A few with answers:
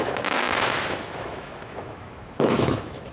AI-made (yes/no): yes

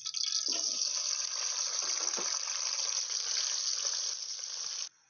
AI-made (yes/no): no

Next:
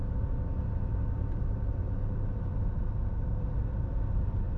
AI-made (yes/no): no